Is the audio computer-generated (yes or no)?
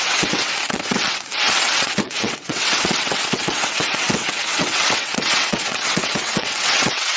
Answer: yes